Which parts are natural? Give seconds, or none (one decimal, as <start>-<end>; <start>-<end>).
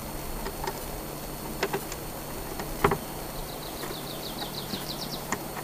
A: 0.0-3.4